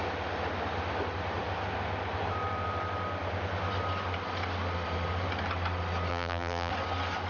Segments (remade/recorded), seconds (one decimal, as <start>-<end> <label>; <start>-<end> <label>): 0.0-6.1 recorded; 6.1-6.7 remade; 6.7-7.3 recorded